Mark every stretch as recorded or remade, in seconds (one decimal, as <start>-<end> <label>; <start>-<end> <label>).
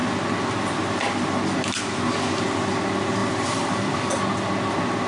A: 0.0-3.2 recorded; 3.2-4.3 remade; 4.3-5.1 recorded